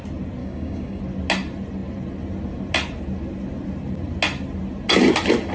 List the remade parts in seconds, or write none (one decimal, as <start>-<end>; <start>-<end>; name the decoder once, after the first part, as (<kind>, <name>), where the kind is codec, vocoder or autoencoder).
0.4-1.0 (codec, DAC)